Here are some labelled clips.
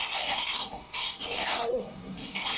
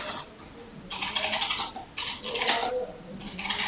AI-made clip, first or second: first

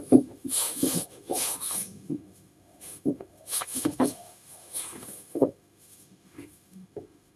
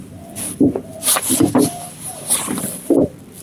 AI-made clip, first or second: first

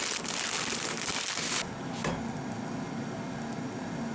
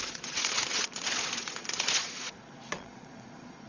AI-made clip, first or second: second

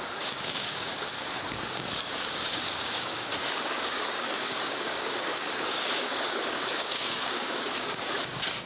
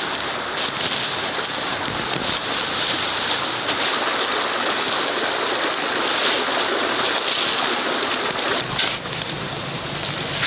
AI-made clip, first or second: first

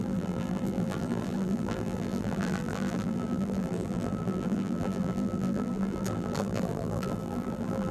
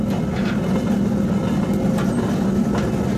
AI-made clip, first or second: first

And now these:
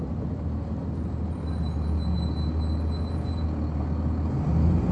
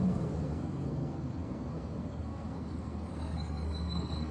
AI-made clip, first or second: second